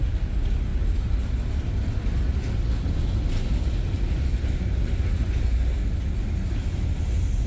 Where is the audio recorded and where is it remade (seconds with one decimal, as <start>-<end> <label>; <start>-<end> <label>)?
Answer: 0.0-7.5 recorded